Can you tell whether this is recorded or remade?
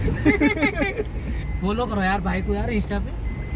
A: recorded